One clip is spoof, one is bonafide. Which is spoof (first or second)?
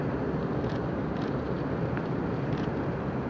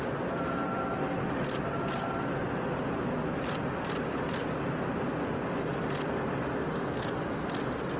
first